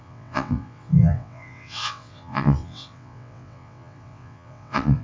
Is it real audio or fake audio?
fake